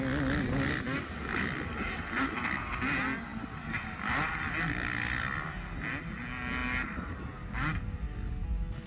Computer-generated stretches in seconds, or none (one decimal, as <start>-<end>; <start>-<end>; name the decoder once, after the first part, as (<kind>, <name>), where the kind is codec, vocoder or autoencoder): none